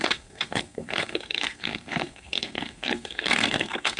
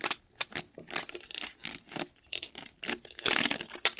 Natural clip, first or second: second